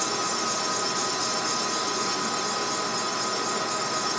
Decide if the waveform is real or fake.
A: real